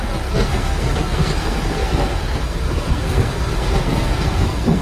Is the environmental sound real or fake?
fake